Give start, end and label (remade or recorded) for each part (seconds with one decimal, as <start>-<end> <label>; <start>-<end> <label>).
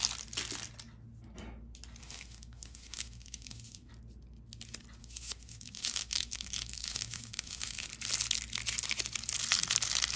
0.0-2.0 recorded; 2.0-3.9 remade; 3.9-5.0 recorded; 5.0-7.9 remade; 7.9-10.2 recorded